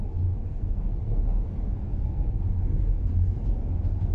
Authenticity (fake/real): fake